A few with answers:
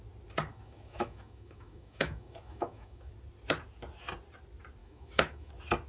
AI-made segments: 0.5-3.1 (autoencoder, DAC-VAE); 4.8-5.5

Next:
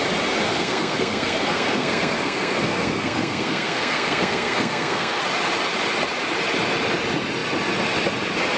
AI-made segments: 0.5-5.2 (codec, SNAC)

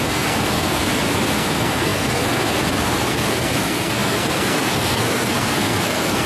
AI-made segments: 0.0-6.3 (codec, SNAC)

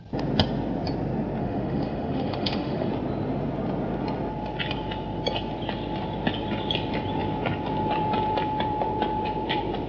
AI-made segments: 1.4-2.9 (autoencoder, DAC-VAE)

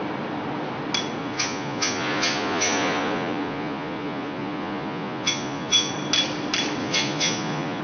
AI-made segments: 1.2-5.9 (vocoder, Vocos); 6.8-7.8

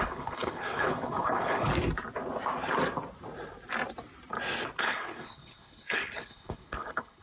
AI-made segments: 0.0-1.7 (codec, HILCodec); 4.8-7.2

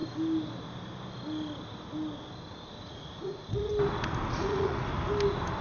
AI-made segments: 2.8-3.7 (vocoder, Vocos); 4.3-4.9